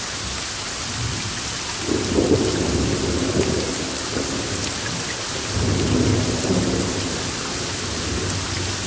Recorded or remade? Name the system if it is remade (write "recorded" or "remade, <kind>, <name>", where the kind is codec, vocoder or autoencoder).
recorded